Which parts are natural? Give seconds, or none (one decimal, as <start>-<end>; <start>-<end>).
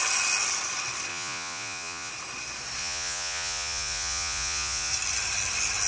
0.0-1.1; 2.1-2.8; 4.9-5.9